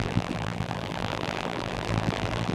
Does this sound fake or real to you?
fake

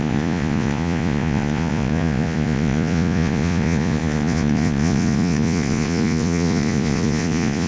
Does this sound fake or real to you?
fake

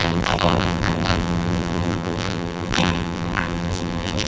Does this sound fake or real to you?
fake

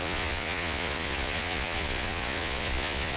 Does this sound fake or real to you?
fake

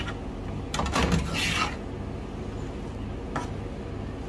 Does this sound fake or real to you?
real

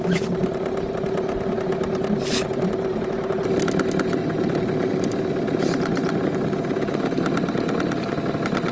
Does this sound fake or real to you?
real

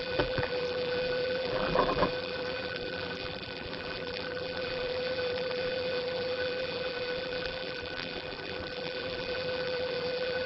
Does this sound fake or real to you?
fake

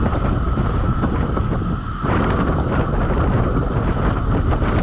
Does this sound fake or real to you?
real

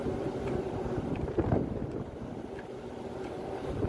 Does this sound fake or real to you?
real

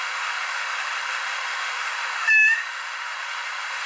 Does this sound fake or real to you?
fake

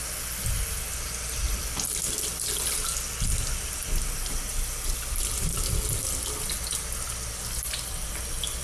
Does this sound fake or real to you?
real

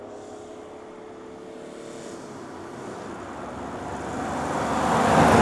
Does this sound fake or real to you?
real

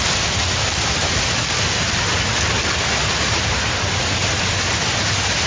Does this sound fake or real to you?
real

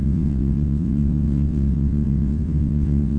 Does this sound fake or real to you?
fake